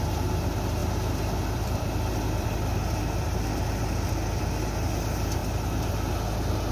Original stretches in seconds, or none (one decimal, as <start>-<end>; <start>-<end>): 0.0-0.8; 4.4-6.7

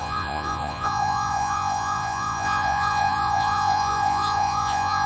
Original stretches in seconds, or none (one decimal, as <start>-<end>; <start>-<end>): none

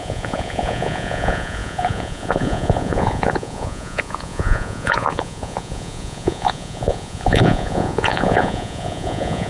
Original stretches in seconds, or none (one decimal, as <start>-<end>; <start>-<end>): none

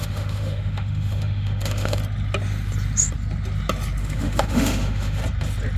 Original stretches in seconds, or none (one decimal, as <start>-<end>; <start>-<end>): 2.0-4.0; 5.2-5.8